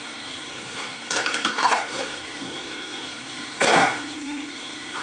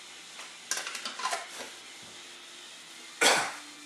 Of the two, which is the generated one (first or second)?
first